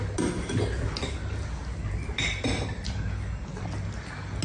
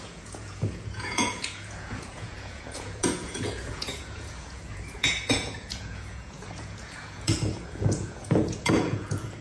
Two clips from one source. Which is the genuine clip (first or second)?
first